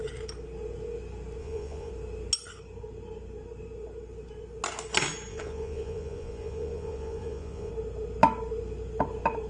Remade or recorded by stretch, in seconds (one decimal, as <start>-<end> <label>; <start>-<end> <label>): 0.0-1.4 recorded; 1.4-1.9 remade; 1.9-5.3 recorded; 5.3-7.7 remade; 7.7-9.5 recorded